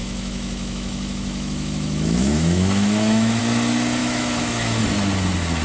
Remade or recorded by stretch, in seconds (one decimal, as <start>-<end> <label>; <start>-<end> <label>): 0.0-3.4 remade; 3.4-4.0 recorded; 4.0-4.8 remade; 4.8-5.6 recorded